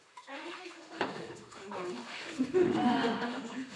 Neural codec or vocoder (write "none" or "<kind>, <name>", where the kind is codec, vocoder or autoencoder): autoencoder, DAC-VAE